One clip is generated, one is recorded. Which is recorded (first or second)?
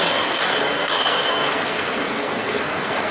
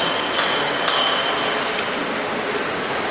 second